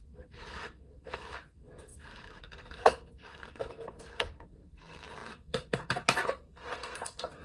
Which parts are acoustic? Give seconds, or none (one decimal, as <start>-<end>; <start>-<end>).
none